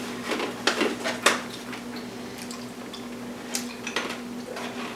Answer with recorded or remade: recorded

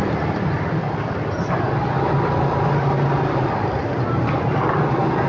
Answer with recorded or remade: recorded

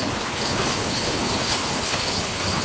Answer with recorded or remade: remade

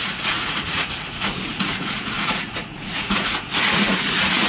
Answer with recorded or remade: remade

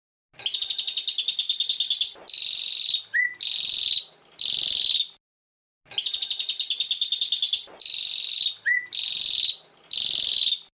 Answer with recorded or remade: recorded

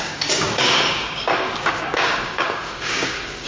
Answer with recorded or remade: remade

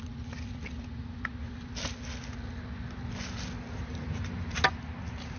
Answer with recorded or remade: recorded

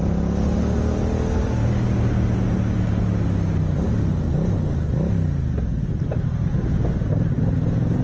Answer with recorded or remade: recorded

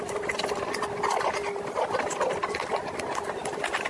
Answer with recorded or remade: recorded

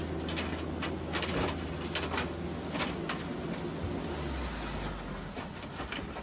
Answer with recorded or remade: recorded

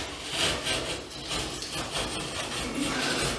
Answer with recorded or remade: recorded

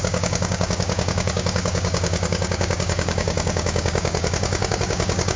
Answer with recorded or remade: remade